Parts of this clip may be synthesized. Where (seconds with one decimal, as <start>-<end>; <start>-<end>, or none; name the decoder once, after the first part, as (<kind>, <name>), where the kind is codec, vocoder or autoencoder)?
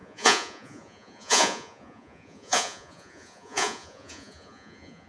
0.0-5.1 (vocoder, Vocos)